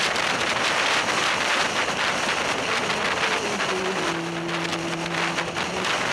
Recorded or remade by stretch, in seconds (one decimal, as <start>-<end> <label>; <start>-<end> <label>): 0.0-6.1 recorded